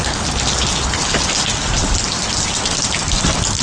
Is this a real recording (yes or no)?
yes